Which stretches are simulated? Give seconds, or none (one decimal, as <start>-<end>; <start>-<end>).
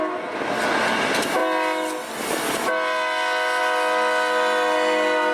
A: none